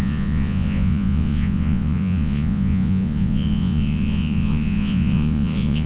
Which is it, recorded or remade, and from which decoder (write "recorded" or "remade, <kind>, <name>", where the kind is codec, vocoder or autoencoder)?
remade, vocoder, Vocos